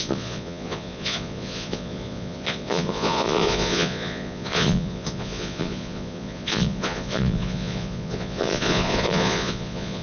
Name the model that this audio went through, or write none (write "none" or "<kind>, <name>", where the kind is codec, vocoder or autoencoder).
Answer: vocoder, Vocos